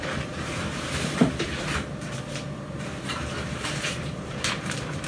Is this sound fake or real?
fake